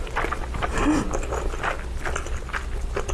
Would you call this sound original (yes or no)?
yes